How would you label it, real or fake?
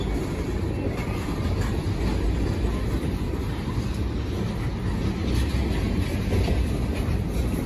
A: real